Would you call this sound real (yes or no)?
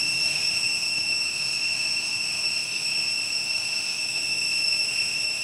no